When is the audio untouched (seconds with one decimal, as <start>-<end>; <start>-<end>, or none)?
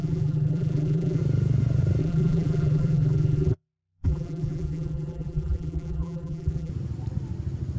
1.2-2.0; 6.7-7.8